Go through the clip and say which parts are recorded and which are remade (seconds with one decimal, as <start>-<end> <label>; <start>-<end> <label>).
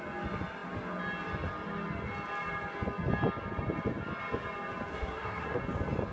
0.0-4.9 recorded; 4.9-5.6 remade; 5.6-6.1 recorded